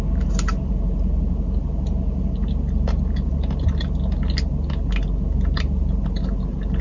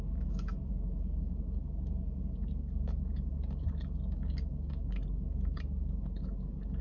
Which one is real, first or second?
first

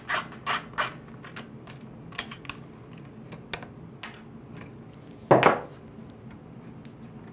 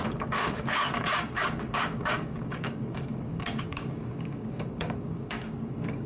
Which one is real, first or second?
first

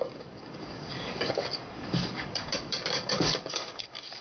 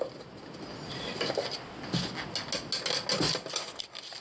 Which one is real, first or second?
second